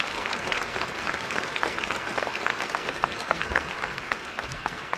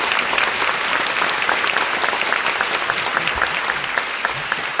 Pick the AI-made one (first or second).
first